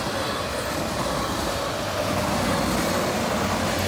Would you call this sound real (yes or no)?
yes